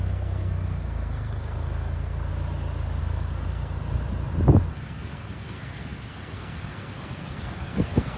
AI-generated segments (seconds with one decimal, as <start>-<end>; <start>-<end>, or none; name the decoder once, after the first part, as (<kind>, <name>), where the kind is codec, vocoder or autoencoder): 0.0-2.3 (codec, SNAC); 3.0-3.8; 4.7-8.2